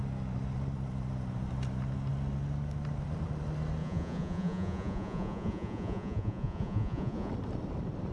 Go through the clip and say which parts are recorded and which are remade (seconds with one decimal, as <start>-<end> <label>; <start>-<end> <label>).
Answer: 0.0-3.8 recorded; 3.8-7.3 remade; 7.3-8.1 recorded